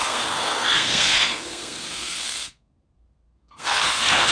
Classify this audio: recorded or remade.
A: remade